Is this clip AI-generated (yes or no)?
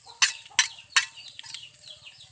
no